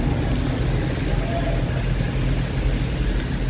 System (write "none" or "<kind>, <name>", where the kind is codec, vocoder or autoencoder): none